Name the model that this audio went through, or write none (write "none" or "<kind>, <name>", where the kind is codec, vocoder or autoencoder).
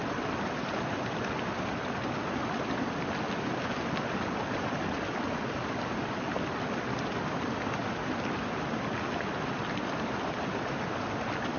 none